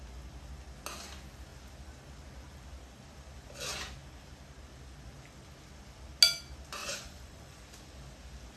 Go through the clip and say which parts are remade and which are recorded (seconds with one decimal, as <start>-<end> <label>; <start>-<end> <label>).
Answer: 0.0-6.8 recorded; 6.8-7.6 remade; 7.6-8.6 recorded